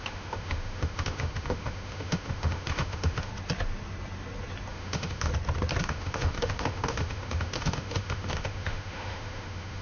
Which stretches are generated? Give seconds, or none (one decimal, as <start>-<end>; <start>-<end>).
0.0-3.3; 4.7-5.3; 5.8-9.8